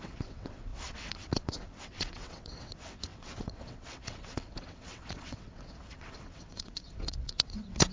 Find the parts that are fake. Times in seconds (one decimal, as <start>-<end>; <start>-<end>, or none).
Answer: 0.0-7.9